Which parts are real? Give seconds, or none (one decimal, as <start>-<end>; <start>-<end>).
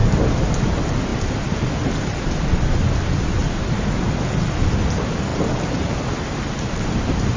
0.0-1.1; 1.7-3.4; 4.2-5.3